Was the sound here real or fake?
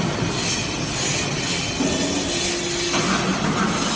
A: real